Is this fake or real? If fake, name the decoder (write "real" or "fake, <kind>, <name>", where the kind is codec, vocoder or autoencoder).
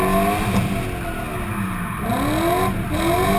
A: real